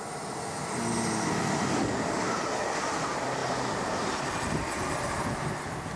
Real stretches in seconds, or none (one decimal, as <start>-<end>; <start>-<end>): 0.0-6.0